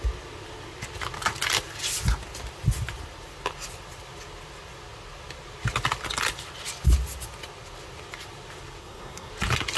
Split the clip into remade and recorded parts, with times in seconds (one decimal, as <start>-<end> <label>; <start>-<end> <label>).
0.0-8.8 recorded; 8.8-9.3 remade; 9.3-9.8 recorded